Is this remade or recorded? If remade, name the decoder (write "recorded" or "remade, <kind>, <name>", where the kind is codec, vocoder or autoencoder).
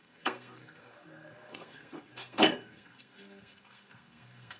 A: remade, codec, SNAC